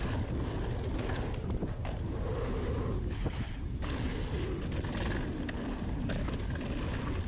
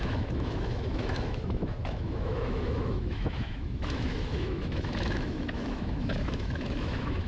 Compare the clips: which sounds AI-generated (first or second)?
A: second